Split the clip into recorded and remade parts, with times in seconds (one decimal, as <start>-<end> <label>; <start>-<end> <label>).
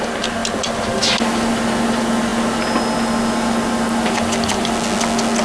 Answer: 0.0-5.4 recorded